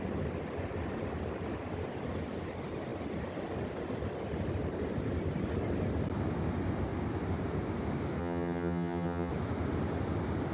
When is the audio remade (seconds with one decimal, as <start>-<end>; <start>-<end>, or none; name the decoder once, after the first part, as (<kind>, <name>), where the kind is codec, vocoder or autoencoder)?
8.2-9.3 (vocoder, HiFi-GAN)